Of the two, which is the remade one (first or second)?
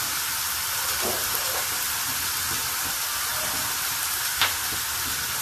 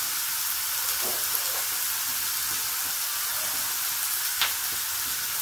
first